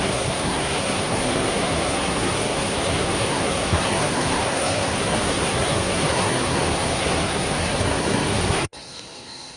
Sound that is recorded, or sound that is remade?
remade